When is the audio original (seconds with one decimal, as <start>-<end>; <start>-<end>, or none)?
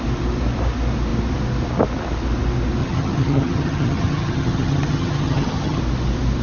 0.0-2.8; 5.8-6.4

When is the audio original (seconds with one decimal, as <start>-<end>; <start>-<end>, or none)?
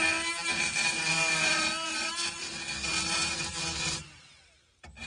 0.0-1.1; 2.1-3.1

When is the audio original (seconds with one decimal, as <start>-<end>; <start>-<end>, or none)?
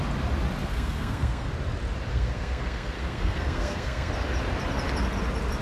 0.0-0.7; 1.5-2.1; 4.1-5.6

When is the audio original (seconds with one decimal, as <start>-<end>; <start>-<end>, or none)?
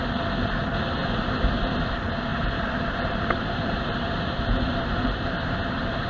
0.0-1.0; 1.9-2.3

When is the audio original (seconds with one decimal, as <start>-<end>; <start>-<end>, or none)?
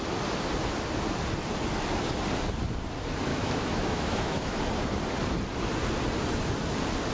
0.0-3.3; 4.6-7.1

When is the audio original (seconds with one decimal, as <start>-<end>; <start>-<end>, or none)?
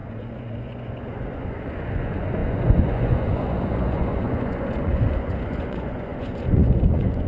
none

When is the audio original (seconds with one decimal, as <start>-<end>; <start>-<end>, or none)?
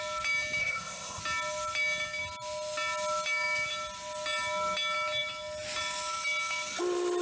0.0-0.6; 1.2-7.2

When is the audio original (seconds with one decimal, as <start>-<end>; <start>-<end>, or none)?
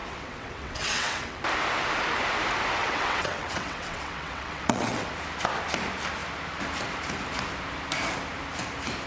1.4-2.8; 5.1-9.1